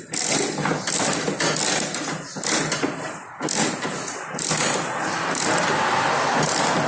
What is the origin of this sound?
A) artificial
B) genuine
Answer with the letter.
B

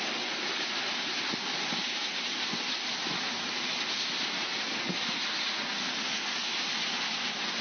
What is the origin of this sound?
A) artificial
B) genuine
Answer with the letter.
B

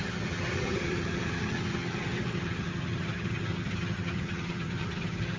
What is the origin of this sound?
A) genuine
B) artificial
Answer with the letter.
B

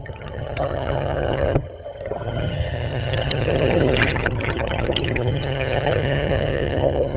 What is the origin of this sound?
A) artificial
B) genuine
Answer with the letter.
A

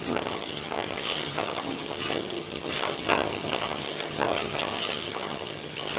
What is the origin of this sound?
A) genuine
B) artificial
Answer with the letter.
B